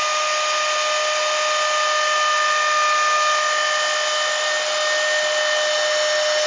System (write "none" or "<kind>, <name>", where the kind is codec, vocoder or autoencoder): none